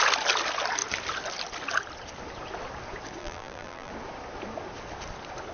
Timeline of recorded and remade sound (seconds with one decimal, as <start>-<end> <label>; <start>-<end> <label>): 0.0-3.2 recorded; 3.2-3.9 remade; 3.9-5.5 recorded